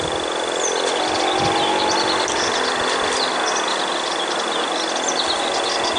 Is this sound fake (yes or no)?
no